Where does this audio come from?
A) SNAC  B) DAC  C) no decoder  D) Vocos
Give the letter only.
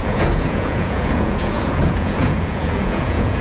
D